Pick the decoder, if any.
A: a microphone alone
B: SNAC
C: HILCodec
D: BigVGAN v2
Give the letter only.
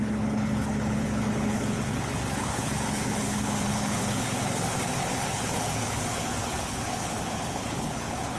C